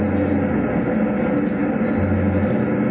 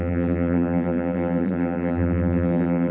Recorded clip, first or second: first